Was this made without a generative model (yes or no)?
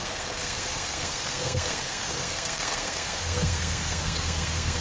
no